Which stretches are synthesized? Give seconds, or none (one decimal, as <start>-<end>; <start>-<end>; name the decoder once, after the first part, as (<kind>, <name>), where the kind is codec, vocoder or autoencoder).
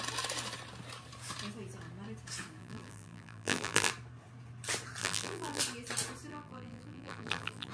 2.6-3.9 (vocoder, BigVGAN v2); 5.0-5.6; 6.3-7.7